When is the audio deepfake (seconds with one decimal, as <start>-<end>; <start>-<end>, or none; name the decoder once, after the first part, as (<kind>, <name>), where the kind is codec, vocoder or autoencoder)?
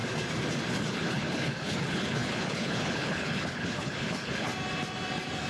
0.7-4.5 (codec, HILCodec)